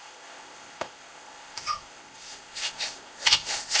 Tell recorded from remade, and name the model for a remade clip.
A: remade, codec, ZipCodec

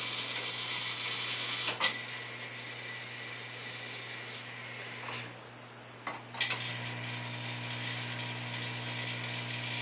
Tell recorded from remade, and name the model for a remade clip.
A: recorded